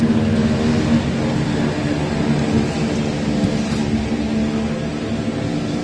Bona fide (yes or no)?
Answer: yes